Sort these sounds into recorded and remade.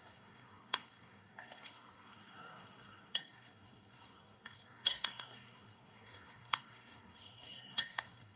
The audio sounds remade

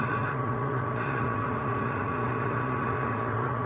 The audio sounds remade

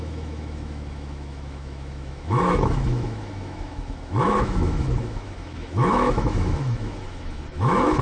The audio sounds remade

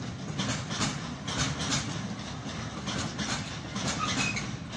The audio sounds recorded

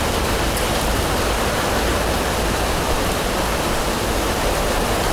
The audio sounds remade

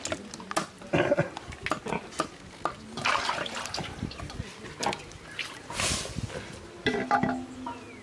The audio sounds recorded